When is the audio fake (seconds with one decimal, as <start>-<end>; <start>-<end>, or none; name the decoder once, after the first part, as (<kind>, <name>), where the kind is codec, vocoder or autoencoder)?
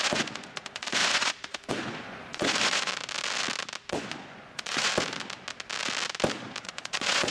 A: 0.0-2.9 (vocoder, Vocos); 3.9-4.9; 6.6-7.3